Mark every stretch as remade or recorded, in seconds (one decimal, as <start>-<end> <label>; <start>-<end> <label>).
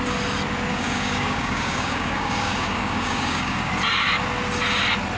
0.0-0.7 recorded; 0.7-3.7 remade; 3.7-5.2 recorded